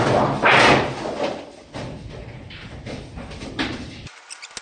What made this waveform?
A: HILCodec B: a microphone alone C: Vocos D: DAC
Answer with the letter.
B